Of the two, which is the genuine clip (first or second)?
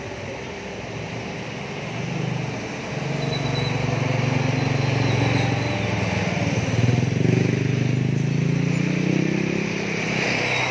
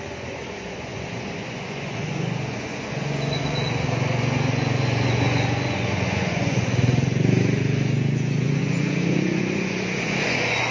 first